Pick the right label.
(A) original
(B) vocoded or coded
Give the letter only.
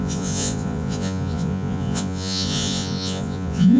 B